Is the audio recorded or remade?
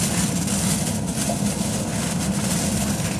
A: recorded